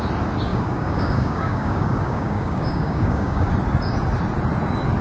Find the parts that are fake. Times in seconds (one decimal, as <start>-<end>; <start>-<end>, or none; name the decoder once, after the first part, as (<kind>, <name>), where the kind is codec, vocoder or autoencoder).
0.5-3.5 (codec, DAC)